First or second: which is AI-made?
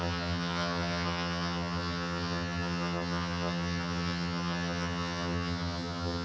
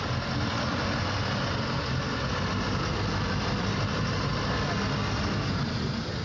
first